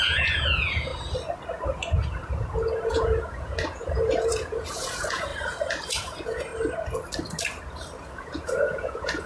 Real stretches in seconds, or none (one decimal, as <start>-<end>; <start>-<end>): 0.9-2.9; 5.3-5.9; 6.5-8.0